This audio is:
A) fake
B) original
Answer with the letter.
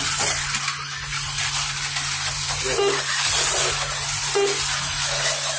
B